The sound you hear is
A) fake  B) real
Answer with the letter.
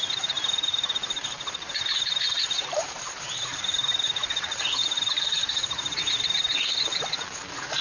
A